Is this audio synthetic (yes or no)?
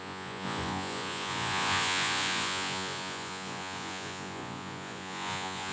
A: yes